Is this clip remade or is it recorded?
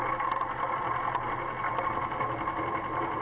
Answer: recorded